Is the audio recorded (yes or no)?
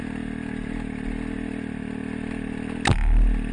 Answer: yes